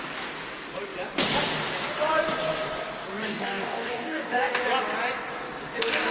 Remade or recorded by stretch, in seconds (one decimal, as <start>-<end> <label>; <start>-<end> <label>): 0.0-3.2 recorded; 3.2-4.6 remade; 4.6-6.1 recorded